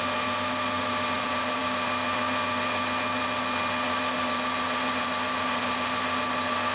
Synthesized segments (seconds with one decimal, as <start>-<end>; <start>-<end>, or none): none